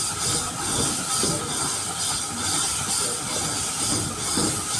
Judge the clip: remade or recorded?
recorded